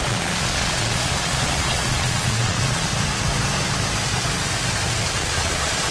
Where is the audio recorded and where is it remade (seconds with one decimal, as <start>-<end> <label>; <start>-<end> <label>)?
0.0-2.9 remade; 2.9-5.2 recorded; 5.2-5.9 remade